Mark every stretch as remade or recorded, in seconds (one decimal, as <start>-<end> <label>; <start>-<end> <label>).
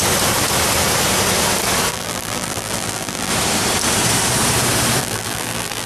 0.0-1.9 recorded; 1.9-3.3 remade; 3.3-5.0 recorded; 5.0-5.9 remade